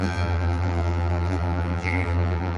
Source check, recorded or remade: remade